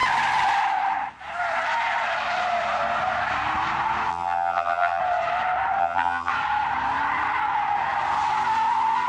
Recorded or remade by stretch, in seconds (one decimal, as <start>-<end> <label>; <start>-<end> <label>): 0.0-4.1 recorded; 4.1-5.0 remade; 5.0-5.8 recorded; 5.8-6.3 remade; 6.3-9.1 recorded